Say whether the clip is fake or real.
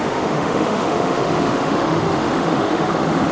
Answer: fake